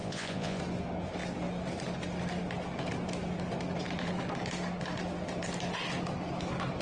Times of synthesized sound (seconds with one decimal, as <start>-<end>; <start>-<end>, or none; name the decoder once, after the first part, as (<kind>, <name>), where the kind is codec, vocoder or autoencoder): 0.0-0.6 (vocoder, Vocos)